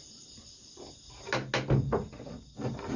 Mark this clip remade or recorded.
recorded